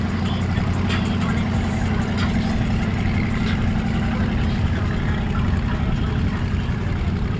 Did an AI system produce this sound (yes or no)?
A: no